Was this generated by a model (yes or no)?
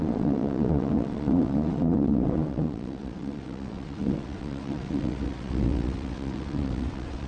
yes